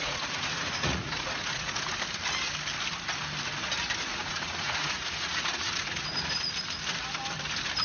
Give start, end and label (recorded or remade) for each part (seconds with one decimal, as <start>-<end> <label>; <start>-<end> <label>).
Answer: 0.0-1.9 remade; 1.9-4.1 recorded; 4.1-6.1 remade; 6.1-7.8 recorded